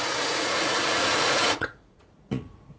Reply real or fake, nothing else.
fake